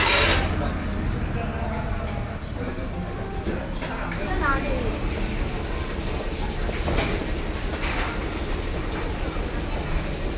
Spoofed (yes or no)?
no